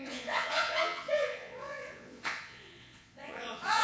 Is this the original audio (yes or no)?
no